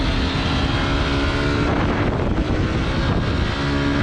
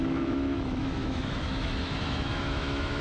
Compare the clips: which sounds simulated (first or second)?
second